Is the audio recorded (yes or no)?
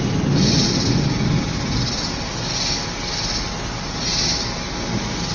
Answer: yes